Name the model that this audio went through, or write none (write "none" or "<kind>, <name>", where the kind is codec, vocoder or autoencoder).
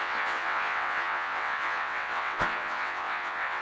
vocoder, WaveNeXt